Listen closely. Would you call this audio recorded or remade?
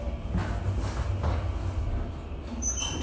recorded